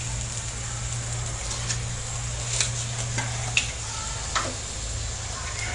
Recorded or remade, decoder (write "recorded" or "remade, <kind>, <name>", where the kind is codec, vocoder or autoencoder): recorded